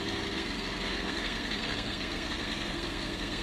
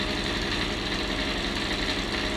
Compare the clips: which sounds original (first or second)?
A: second